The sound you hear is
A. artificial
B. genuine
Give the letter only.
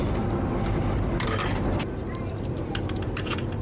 B